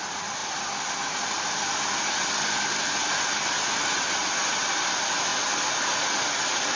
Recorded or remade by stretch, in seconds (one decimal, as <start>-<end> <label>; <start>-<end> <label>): 0.0-6.8 recorded